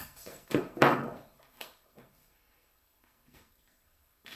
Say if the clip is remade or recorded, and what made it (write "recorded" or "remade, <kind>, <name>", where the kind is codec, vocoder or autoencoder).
remade, codec, SNAC